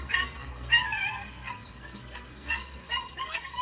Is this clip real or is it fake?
fake